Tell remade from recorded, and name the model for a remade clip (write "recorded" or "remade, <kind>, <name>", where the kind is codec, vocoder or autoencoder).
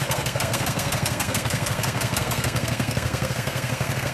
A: remade, codec, SNAC